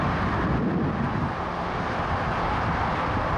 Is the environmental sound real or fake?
real